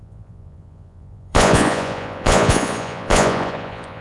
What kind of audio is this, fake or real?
fake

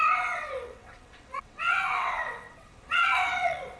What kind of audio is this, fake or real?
fake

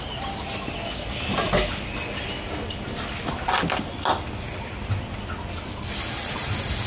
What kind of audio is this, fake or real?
real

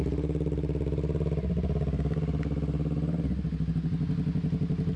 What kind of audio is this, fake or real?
real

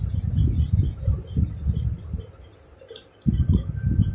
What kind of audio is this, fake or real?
real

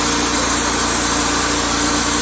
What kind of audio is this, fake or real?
real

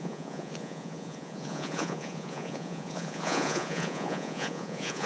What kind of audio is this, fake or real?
fake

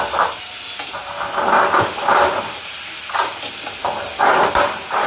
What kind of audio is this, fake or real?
real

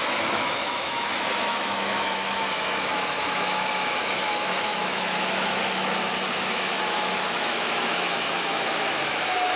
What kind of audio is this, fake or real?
fake